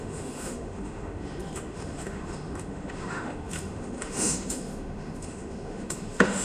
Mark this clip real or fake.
fake